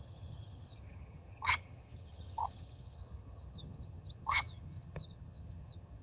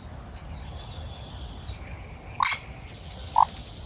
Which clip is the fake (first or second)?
first